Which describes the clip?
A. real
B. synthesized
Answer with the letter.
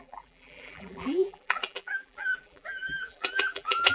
B